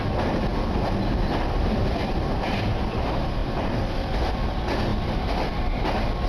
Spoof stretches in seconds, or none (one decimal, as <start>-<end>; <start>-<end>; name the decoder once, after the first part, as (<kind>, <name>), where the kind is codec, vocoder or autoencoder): 0.5-2.6 (vocoder, BigVGAN v2); 3.4-4.3; 4.9-5.6